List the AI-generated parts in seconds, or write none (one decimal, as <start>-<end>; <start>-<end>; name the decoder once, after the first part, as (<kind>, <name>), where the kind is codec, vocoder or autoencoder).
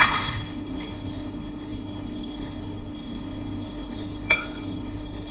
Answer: 0.0-5.3 (codec, HILCodec)